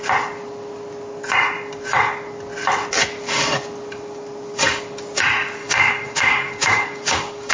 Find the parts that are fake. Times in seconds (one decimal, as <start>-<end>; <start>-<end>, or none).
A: 5.6-7.5

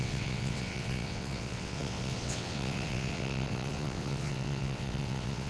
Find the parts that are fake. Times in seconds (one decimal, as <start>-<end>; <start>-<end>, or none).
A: 0.0-5.5

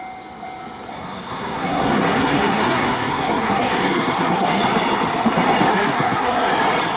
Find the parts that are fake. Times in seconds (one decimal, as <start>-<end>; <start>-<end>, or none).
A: 0.9-4.6; 5.7-6.5

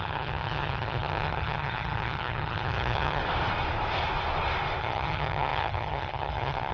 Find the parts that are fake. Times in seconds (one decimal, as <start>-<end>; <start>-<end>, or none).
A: 0.0-3.2; 4.8-6.7

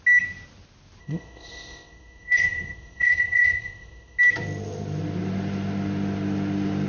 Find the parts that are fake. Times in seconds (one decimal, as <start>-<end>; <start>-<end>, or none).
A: 1.0-4.2